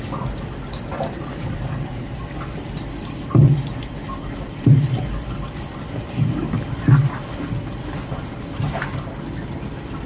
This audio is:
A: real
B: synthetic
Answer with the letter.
A